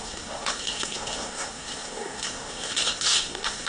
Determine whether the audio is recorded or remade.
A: remade